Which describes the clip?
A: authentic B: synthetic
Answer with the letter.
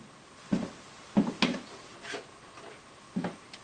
A